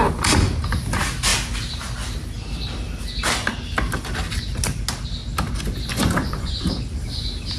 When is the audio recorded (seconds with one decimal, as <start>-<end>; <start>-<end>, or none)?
0.0-5.9; 6.8-7.6